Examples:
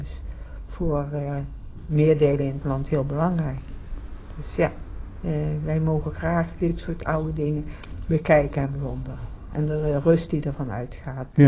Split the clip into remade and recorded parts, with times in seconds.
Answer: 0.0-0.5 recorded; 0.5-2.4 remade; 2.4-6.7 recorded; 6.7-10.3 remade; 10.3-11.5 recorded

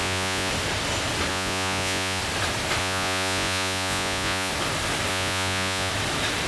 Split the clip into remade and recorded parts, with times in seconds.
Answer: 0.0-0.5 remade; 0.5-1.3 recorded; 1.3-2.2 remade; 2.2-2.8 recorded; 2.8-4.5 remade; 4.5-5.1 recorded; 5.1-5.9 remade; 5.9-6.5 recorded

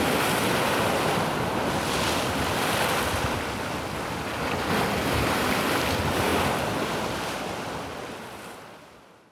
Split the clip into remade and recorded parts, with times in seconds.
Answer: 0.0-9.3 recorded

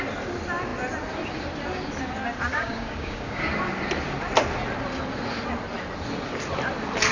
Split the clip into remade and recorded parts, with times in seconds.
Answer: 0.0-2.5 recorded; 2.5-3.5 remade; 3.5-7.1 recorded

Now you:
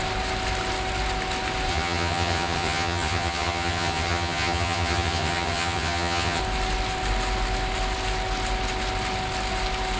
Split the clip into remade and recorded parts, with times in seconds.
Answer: 0.0-1.7 recorded; 1.7-6.4 remade; 6.4-10.0 recorded